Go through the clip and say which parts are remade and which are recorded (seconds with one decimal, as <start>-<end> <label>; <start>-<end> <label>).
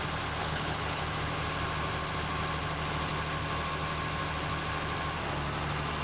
0.0-0.4 recorded; 0.4-1.0 remade; 1.0-6.0 recorded